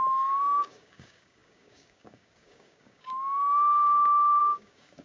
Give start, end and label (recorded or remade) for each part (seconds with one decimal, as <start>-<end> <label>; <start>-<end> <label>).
0.0-5.0 remade